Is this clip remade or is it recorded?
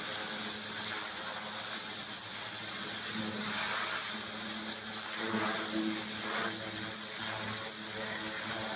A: recorded